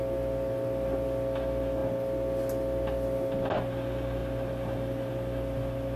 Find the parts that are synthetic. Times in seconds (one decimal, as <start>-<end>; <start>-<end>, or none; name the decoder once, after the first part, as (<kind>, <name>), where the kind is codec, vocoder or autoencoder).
none